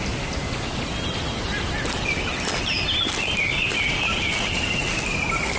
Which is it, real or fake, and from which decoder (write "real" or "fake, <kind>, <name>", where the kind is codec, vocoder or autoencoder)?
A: real